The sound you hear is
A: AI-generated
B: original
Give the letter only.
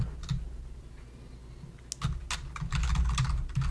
B